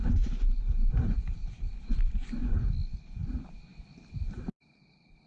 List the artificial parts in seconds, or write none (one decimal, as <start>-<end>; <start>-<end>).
1.1-2.4; 3.0-3.7; 4.3-5.3